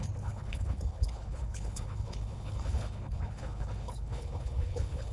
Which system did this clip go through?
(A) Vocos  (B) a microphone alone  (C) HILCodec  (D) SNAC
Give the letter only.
C